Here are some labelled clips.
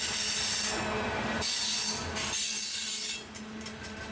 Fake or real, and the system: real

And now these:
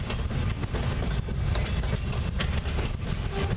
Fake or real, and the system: real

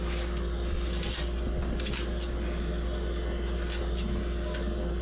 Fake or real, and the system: real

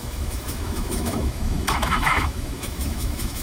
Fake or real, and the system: fake, autoencoder, DAC-VAE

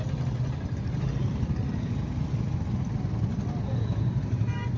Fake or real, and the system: real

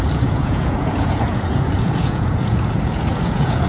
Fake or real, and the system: fake, vocoder, Vocos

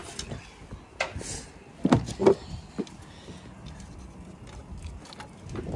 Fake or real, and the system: real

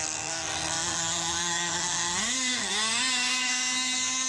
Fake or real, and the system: fake, codec, SNAC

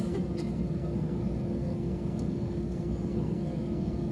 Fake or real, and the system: fake, codec, SNAC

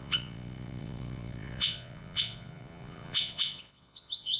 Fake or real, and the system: fake, vocoder, Vocos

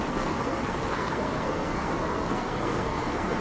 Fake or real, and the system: fake, codec, SNAC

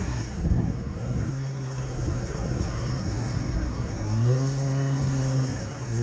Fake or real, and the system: fake, codec, SNAC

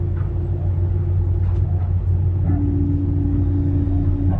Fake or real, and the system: real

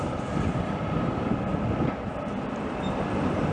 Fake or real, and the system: fake, vocoder, BigVGAN v2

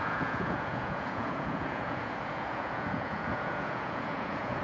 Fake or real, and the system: fake, vocoder, Vocos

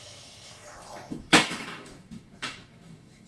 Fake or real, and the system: fake, autoencoder, DAC-VAE